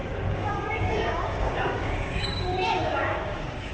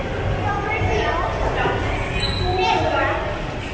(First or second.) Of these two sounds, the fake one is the first